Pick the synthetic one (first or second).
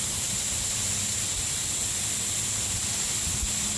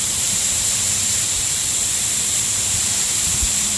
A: second